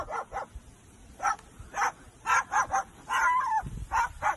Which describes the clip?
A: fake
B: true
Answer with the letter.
B